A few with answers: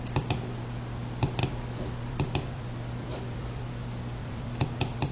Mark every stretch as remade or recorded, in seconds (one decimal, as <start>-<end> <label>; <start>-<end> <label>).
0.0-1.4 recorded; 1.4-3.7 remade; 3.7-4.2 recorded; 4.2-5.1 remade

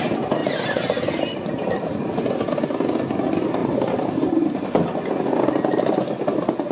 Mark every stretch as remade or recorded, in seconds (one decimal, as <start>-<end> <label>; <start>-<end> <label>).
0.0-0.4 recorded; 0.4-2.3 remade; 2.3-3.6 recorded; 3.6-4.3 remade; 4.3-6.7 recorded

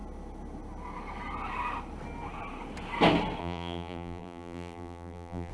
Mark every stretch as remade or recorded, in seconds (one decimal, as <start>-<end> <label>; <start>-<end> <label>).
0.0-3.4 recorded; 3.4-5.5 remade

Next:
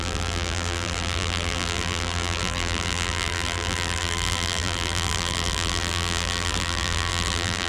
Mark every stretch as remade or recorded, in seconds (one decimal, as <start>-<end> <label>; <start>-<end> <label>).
0.0-7.7 remade

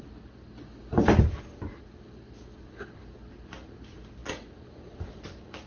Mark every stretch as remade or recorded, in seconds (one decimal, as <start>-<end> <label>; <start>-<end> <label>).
0.0-5.7 recorded

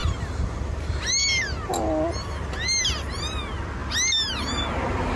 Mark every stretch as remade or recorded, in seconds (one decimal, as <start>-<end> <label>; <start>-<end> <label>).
0.0-5.2 recorded